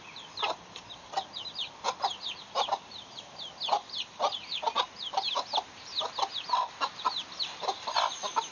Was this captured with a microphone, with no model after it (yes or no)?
yes